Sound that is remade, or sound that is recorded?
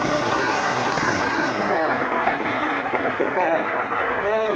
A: remade